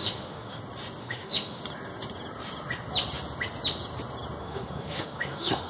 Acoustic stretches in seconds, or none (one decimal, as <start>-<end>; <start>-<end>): 0.6-1.0; 1.6-4.4